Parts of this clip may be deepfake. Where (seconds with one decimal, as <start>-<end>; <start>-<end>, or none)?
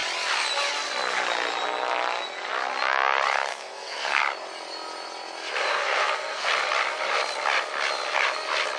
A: 3.5-4.2; 5.7-6.5